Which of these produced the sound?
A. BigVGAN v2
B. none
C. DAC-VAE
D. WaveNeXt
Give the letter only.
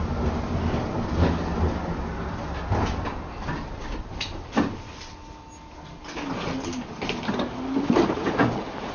B